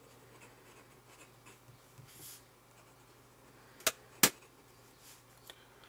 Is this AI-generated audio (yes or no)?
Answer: no